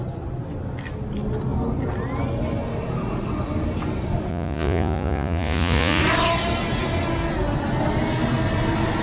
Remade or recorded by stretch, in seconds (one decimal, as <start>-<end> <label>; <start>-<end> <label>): 0.0-4.3 recorded; 4.3-6.0 remade; 6.0-9.0 recorded

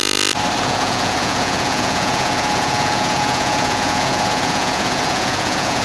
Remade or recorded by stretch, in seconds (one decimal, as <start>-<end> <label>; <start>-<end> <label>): 0.0-0.6 recorded; 0.6-5.8 remade

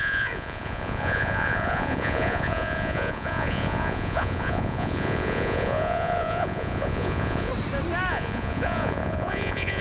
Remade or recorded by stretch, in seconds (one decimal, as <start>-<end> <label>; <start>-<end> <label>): 0.0-7.5 remade; 7.5-8.1 recorded; 8.1-9.8 remade

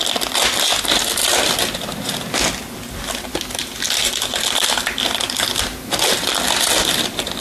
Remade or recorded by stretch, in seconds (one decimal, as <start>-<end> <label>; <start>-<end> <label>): 0.0-7.4 recorded

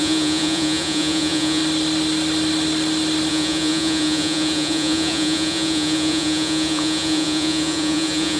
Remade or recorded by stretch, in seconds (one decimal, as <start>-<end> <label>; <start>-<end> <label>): 0.0-1.6 remade; 1.6-3.3 recorded; 3.3-8.4 remade

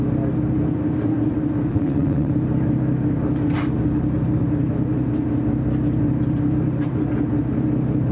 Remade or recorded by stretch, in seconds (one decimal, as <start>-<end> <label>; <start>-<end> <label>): 0.0-1.7 recorded; 1.7-2.3 remade; 2.3-8.1 recorded

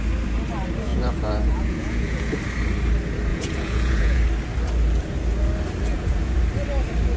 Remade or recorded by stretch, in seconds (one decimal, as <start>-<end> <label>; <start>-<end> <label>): 0.0-0.9 recorded; 0.9-2.3 remade; 2.3-3.3 recorded; 3.3-4.2 remade; 4.2-5.9 recorded; 5.9-6.4 remade; 6.4-7.2 recorded

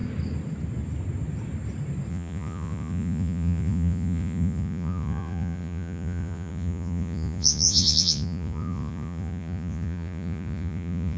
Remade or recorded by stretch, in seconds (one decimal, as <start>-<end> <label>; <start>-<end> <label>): 0.0-2.1 recorded; 2.1-11.2 remade